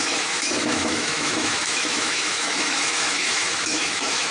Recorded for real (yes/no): no